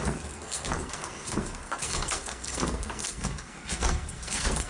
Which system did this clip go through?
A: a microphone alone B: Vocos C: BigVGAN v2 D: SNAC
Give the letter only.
D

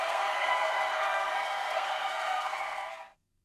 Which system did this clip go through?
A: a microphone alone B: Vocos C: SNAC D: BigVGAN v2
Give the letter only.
C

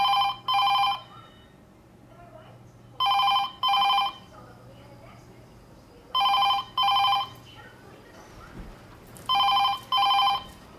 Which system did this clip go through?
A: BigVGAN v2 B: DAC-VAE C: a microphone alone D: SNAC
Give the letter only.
C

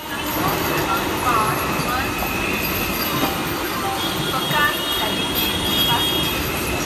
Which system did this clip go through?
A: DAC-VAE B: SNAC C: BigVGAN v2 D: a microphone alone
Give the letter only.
D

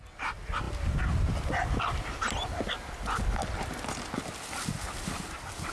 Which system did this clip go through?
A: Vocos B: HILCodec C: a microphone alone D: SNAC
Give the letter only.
C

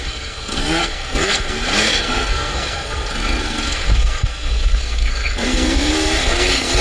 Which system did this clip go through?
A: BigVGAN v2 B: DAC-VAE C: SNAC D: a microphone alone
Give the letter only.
C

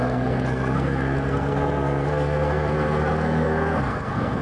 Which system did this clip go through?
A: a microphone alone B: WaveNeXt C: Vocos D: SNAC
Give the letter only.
D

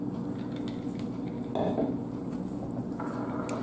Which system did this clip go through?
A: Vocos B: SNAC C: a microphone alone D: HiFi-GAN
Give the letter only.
C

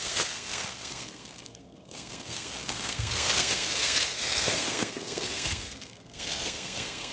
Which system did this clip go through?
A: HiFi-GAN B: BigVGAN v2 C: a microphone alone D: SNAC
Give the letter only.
D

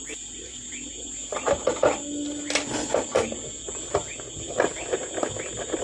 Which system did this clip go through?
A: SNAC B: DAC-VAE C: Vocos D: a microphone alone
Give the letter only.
D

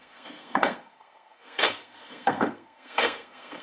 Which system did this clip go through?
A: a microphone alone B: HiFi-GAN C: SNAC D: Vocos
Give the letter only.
C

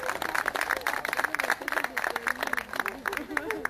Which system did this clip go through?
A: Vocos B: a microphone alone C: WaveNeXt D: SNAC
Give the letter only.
B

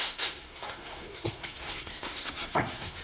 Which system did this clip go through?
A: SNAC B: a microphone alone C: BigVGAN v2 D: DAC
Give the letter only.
A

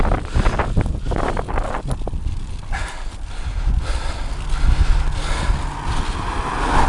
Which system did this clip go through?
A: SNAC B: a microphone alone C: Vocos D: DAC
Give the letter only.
B